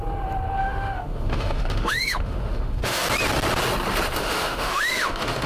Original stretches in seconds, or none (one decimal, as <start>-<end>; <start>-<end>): 0.0-0.6; 3.0-4.2